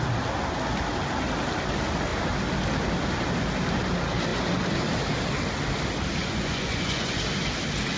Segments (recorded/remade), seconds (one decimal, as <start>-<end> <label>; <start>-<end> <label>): 0.0-6.2 recorded; 6.2-7.2 remade; 7.2-8.0 recorded